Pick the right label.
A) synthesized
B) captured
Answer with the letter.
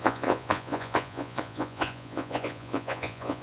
A